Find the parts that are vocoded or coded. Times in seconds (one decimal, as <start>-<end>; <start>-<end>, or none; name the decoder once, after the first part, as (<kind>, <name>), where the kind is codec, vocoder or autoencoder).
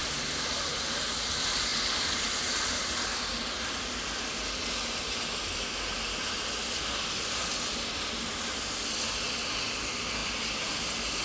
none